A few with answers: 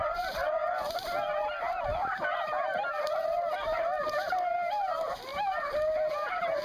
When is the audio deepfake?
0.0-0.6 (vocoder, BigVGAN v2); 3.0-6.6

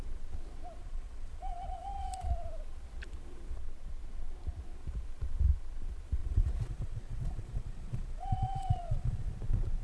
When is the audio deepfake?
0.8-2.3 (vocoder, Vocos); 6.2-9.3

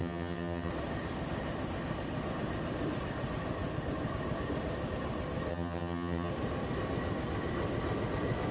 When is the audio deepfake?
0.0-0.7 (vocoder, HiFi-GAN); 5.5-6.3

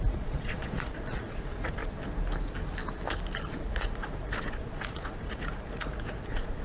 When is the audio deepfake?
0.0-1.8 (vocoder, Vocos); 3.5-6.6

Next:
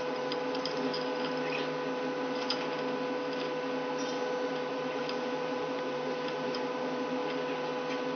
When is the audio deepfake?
0.0-0.9 (vocoder, BigVGAN v2); 4.7-7.2